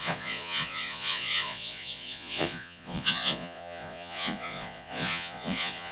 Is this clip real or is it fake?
fake